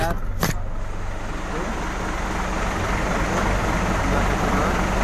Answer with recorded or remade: recorded